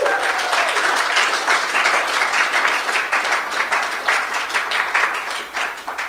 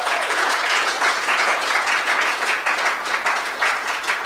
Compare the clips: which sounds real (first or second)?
first